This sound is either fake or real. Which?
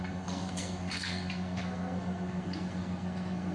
fake